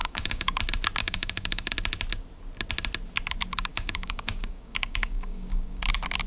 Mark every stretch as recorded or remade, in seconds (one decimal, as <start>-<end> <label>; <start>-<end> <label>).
0.0-0.6 remade; 0.6-1.0 recorded; 1.0-1.7 remade; 1.7-3.7 recorded; 3.7-5.8 remade; 5.8-6.3 recorded